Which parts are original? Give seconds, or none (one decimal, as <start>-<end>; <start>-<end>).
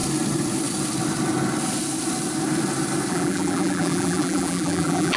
0.0-3.1